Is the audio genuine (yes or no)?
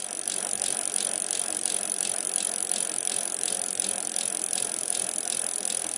yes